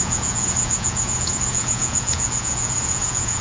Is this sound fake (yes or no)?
yes